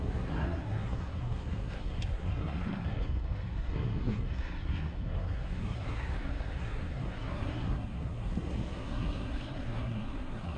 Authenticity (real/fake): fake